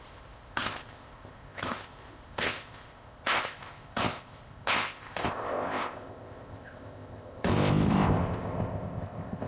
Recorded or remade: remade